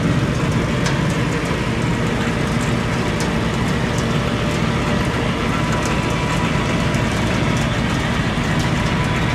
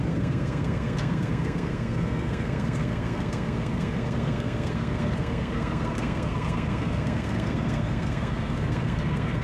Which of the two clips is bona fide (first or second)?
first